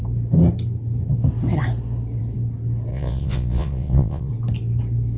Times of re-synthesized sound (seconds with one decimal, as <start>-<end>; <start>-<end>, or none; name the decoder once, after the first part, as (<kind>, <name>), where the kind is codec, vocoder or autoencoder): 2.9-4.3 (vocoder, Vocos)